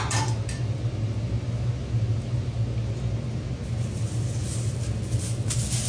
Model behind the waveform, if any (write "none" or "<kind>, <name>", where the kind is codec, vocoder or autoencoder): none